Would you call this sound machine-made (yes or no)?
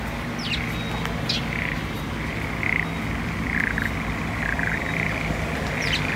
no